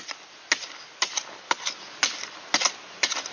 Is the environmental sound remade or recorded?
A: recorded